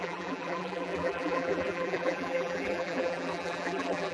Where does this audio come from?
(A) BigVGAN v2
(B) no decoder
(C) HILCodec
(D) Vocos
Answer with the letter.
A